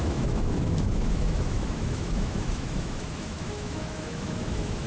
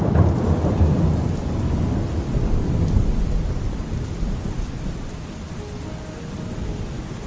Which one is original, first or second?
second